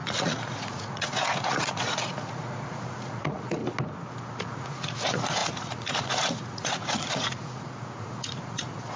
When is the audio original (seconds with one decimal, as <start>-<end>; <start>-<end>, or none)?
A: 3.6-4.4